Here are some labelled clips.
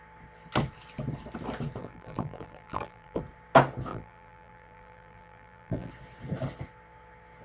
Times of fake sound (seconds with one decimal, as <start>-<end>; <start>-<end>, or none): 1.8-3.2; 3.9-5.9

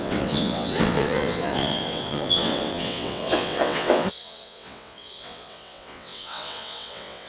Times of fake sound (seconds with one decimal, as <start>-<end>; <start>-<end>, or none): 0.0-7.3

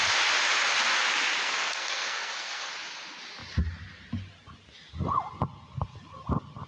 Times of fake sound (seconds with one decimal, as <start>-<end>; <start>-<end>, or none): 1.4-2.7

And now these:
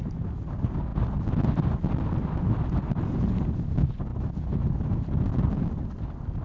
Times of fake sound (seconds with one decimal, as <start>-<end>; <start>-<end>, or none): 0.0-4.1; 4.9-6.4

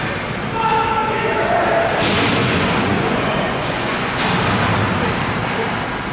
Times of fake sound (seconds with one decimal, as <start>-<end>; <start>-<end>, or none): 1.0-1.6; 2.4-4.2

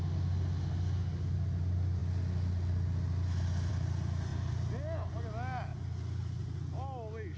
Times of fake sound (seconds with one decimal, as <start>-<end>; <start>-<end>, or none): none

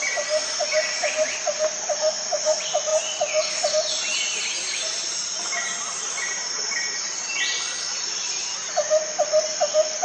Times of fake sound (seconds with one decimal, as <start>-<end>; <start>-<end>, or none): none

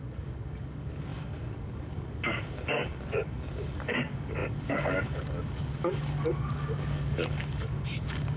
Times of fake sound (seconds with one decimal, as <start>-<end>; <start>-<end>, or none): 0.0-8.4